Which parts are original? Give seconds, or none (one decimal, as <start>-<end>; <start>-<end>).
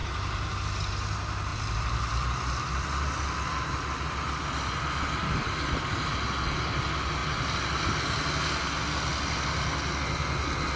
0.5-1.5; 5.0-10.8